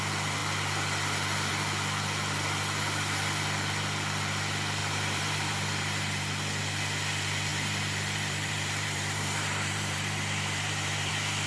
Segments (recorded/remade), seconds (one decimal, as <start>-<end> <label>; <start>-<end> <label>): 0.0-4.8 recorded; 4.8-6.6 remade; 6.6-7.5 recorded; 7.5-11.1 remade; 11.1-11.5 recorded